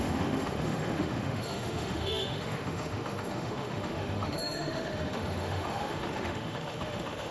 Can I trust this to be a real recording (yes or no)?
no